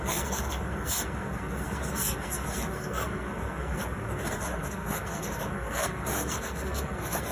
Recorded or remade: remade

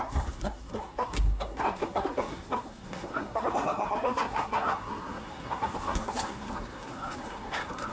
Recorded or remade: remade